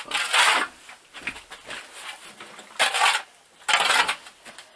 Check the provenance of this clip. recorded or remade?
recorded